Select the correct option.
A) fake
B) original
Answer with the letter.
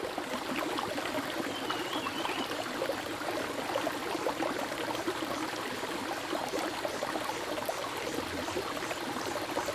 B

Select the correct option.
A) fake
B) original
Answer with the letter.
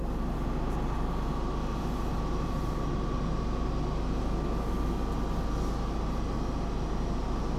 B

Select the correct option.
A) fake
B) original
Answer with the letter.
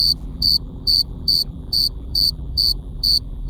A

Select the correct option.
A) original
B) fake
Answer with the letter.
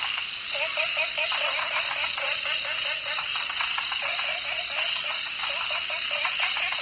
A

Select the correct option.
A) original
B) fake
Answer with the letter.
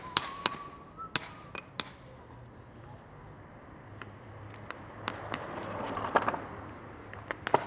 A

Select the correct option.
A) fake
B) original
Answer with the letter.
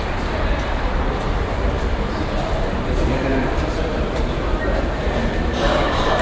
A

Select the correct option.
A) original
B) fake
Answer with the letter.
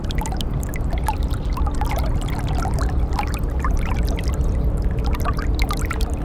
B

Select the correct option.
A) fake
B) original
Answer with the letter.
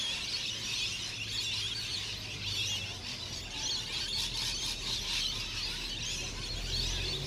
B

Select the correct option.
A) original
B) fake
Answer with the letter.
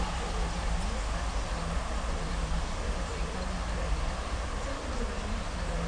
A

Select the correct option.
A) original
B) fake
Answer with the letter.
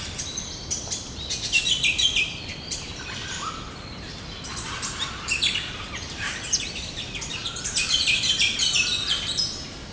B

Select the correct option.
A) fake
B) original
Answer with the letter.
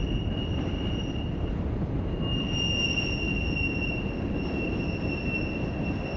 B